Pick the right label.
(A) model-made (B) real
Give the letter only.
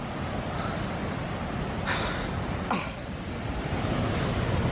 B